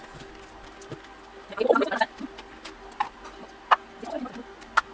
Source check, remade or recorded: recorded